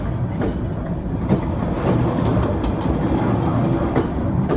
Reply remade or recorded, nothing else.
recorded